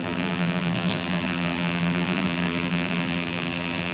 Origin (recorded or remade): remade